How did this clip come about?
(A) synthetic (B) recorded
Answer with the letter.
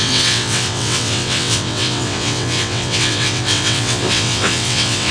A